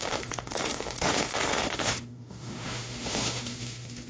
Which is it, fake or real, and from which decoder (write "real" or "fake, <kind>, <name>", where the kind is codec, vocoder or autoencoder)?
fake, autoencoder, DAC-VAE